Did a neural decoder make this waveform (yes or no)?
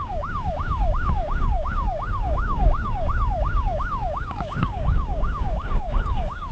yes